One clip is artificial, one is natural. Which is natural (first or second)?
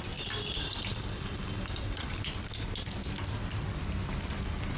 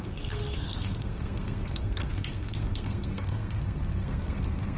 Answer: first